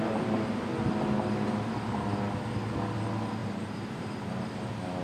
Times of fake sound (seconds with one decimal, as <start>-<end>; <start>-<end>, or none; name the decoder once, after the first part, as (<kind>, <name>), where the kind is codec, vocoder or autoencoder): 3.4-4.3 (vocoder, BigVGAN v2)